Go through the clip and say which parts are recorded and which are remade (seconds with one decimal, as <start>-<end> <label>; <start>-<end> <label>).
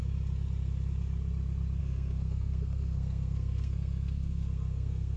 0.0-1.8 recorded; 1.8-5.2 remade